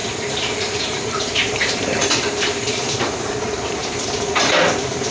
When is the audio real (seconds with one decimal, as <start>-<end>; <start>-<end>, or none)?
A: 3.8-5.1